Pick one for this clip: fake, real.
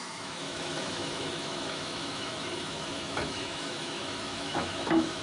fake